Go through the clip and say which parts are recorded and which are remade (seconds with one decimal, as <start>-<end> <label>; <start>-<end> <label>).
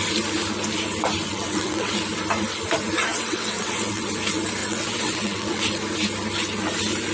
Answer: 0.0-1.3 recorded; 1.3-1.9 remade; 1.9-3.1 recorded; 3.1-4.1 remade; 4.1-4.6 recorded; 4.6-5.6 remade; 5.6-7.1 recorded